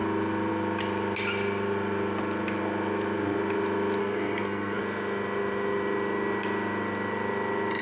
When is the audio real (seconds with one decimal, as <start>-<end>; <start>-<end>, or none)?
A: 0.0-4.0; 4.8-7.8